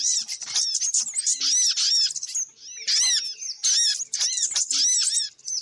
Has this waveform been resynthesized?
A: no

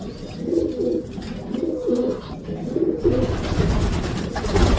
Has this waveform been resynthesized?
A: no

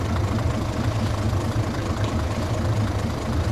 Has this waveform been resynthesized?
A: no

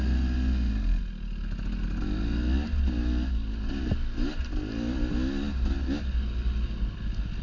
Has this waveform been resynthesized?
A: no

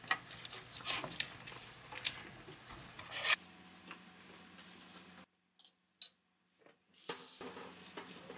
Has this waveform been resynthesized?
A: no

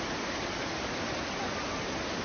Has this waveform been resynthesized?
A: no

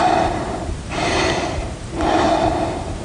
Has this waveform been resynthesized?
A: yes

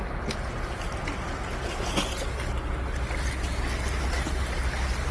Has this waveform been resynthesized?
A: no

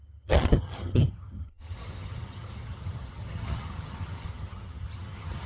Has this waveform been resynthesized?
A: yes